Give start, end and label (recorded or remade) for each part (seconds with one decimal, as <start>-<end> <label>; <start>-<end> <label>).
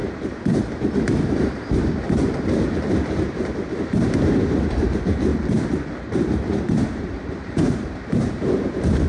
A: 0.0-5.3 remade; 5.3-5.9 recorded; 5.9-9.1 remade